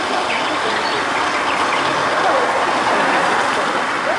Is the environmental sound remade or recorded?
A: recorded